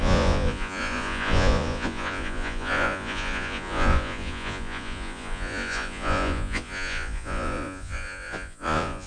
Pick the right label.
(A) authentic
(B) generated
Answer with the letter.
B